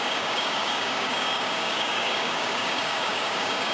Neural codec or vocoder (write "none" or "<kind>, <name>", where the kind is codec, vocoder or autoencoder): codec, DAC